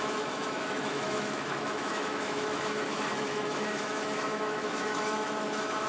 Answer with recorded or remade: remade